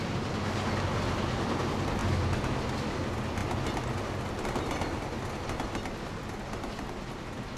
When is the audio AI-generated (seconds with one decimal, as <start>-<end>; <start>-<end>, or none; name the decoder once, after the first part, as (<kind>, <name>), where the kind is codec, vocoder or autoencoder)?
none